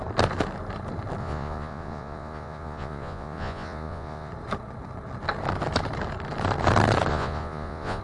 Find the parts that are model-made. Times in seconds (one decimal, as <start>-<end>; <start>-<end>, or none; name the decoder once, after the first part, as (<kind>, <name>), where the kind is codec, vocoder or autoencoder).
1.2-4.3 (vocoder, Vocos); 7.1-8.0